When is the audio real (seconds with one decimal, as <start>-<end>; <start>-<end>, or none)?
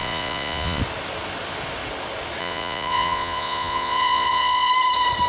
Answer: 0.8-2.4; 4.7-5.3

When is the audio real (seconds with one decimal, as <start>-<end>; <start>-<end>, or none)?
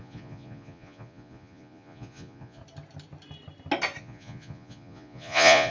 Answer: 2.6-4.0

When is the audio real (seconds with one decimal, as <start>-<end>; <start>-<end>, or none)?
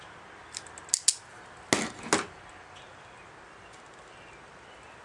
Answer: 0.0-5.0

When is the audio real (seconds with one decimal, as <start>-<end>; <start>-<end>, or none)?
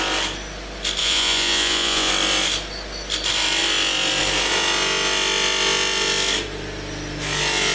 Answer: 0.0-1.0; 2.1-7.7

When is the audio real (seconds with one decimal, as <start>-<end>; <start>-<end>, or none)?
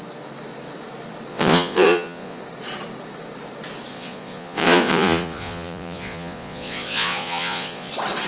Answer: 0.0-1.3; 2.4-3.9; 7.9-8.3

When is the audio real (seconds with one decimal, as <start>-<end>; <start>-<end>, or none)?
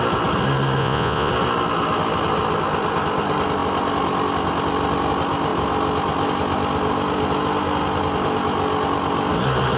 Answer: 0.0-0.8; 1.3-9.8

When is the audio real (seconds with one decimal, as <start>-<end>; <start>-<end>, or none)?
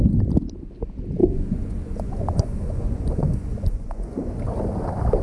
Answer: 0.0-1.2; 4.3-5.2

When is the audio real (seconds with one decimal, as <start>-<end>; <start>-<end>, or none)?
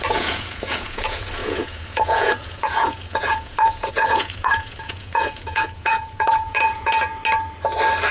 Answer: 7.1-8.1